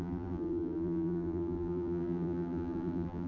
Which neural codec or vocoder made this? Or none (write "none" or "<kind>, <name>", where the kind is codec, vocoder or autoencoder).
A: vocoder, BigVGAN v2